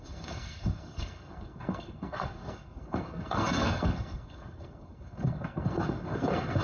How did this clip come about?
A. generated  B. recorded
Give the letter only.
A